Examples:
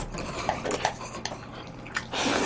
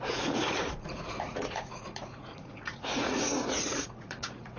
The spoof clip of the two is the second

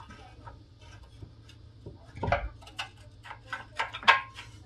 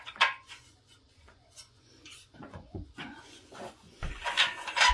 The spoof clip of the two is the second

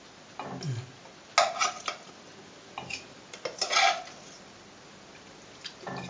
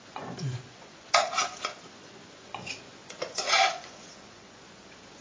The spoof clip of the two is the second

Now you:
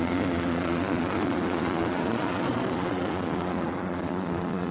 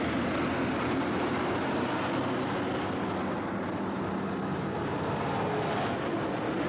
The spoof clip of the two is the first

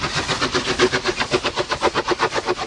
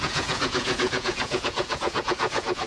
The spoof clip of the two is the second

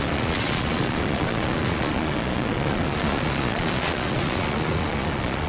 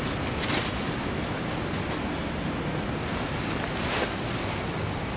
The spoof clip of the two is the first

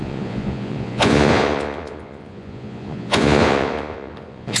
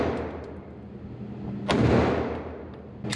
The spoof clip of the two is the first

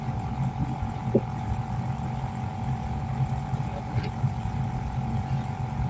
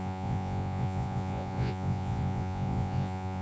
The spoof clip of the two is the second